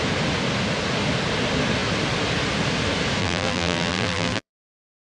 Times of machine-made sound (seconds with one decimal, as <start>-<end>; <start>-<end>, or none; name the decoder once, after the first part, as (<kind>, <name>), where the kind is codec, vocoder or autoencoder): 3.2-4.5 (vocoder, BigVGAN v2)